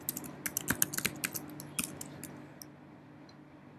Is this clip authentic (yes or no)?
yes